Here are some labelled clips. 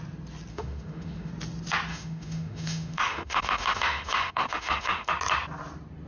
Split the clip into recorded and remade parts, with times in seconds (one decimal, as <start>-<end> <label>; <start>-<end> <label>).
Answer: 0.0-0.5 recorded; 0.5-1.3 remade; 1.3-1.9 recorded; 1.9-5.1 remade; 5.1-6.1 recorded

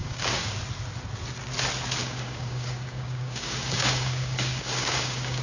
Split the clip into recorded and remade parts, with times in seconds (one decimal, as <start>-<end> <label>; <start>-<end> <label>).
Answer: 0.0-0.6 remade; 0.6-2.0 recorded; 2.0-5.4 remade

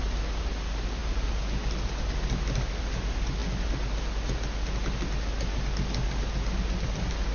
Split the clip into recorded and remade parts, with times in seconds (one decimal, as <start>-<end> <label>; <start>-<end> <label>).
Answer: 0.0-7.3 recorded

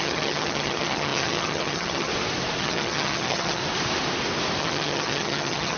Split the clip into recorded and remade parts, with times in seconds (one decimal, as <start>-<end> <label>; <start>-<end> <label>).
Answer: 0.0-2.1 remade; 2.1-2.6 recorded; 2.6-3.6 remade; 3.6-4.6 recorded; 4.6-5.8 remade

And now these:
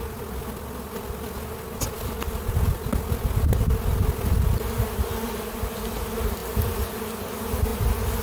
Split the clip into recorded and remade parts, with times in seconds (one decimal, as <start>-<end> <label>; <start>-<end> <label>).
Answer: 0.0-8.2 recorded